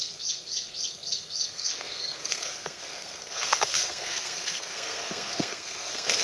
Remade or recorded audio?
remade